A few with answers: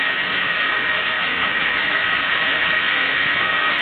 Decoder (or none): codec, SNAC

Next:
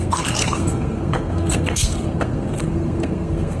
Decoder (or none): codec, SNAC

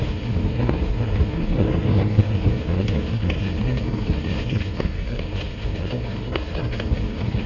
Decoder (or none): codec, SNAC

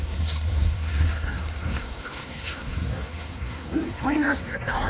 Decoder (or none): codec, SNAC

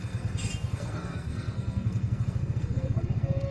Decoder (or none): codec, SNAC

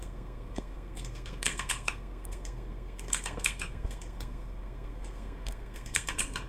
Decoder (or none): codec, SNAC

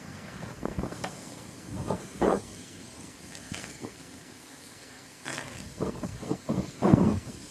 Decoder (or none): codec, SNAC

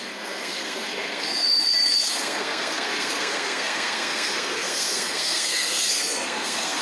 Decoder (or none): codec, SNAC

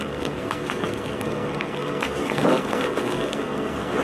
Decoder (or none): codec, SNAC